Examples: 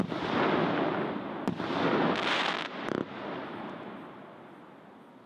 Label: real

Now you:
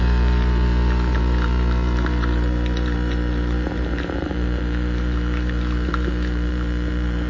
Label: fake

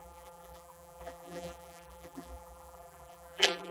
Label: fake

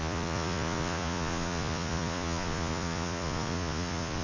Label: fake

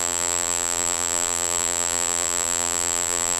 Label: fake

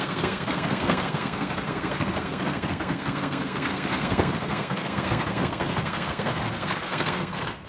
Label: fake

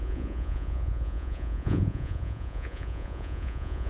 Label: fake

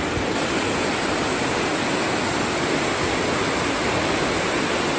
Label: real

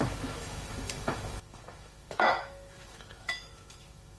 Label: fake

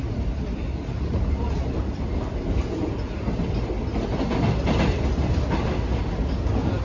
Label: real